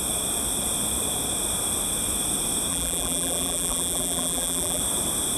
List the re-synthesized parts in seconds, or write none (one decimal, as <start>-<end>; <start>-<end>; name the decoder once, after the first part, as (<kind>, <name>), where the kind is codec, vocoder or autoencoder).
2.7-4.8 (vocoder, BigVGAN v2)